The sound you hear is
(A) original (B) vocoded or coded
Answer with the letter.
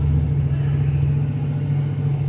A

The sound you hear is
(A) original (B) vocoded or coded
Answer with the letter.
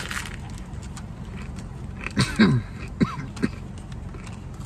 A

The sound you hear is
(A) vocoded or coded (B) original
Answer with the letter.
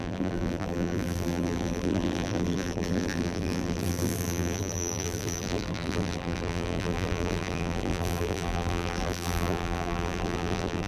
A